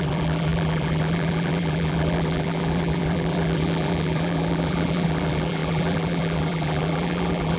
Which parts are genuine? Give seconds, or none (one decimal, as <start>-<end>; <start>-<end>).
none